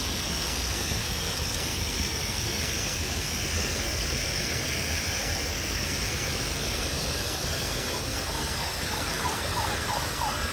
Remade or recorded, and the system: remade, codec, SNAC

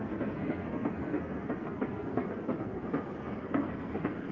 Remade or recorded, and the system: remade, codec, SNAC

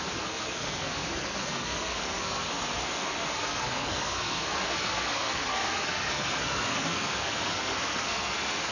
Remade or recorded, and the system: remade, codec, SNAC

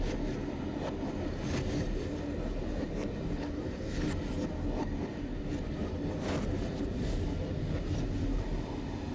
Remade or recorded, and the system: recorded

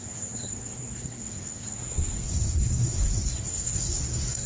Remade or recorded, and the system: remade, codec, SNAC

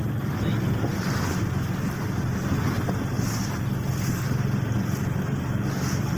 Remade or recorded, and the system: recorded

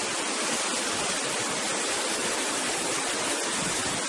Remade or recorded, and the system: recorded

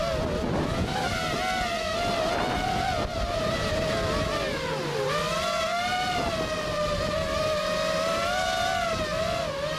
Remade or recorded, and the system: recorded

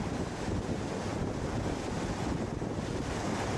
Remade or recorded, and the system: recorded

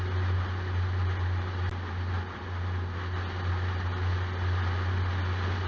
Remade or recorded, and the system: recorded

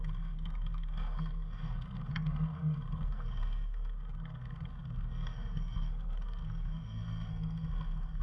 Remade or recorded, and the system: remade, codec, SNAC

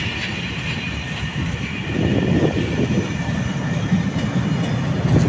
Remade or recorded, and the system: recorded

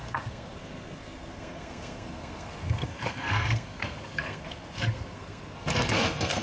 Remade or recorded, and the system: remade, codec, SNAC